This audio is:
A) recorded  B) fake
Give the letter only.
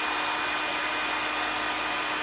A